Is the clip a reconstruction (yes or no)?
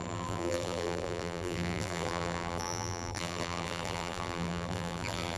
yes